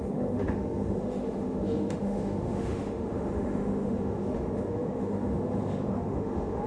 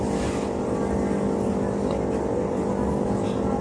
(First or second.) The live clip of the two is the second